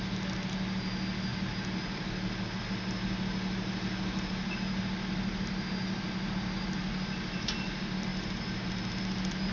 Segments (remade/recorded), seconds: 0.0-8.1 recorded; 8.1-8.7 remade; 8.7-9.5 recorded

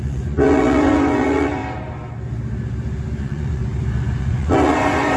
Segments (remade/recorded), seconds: 0.0-1.6 remade; 1.6-3.2 recorded; 3.2-3.6 remade; 3.6-4.2 recorded; 4.2-5.2 remade

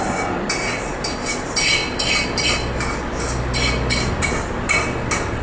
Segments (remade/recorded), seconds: 0.0-5.4 recorded

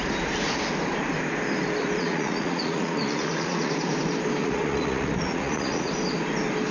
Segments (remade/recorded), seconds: 0.0-1.8 recorded; 1.8-3.7 remade; 3.7-4.4 recorded; 4.4-5.9 remade; 5.9-6.7 recorded